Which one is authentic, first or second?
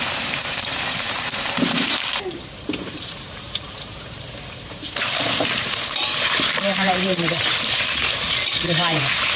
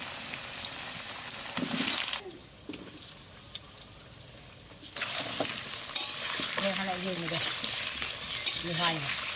second